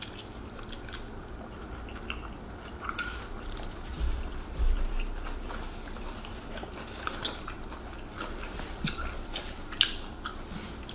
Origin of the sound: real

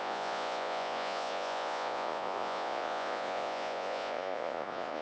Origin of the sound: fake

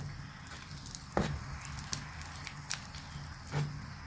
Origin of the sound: real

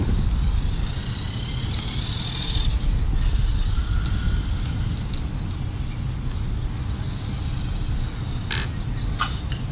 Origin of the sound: real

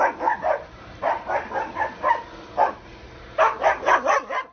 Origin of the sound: real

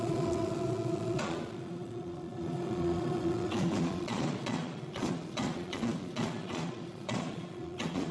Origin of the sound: fake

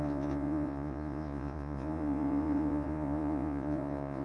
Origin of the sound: fake